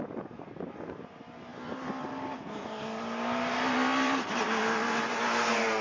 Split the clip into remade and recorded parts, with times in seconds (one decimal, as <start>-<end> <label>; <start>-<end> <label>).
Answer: 0.0-1.5 recorded; 1.5-5.0 remade; 5.0-5.8 recorded